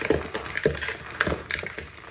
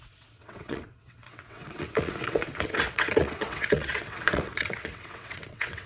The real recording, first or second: first